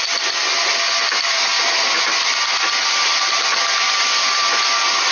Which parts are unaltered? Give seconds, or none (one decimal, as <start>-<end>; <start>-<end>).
0.0-5.1